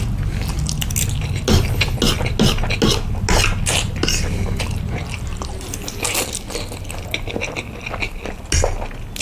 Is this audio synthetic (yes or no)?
no